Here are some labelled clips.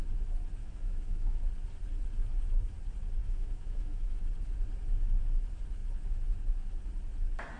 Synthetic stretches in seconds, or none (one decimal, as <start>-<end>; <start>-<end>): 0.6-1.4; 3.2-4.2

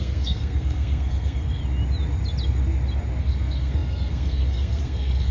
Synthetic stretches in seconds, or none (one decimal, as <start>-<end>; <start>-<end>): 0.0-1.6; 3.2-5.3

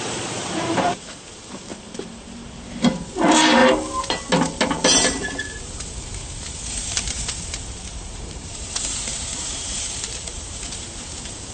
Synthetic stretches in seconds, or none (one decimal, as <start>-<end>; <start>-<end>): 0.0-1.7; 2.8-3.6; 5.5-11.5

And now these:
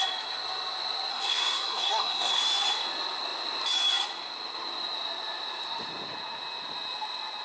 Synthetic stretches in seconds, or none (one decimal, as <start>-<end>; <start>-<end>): 1.1-2.4